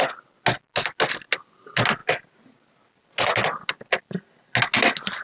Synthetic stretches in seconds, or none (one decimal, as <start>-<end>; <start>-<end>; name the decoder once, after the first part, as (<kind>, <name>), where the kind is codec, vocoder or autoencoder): none